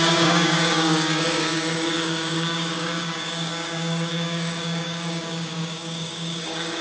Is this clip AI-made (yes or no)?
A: yes